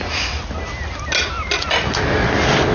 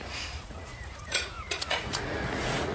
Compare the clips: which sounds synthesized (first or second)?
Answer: second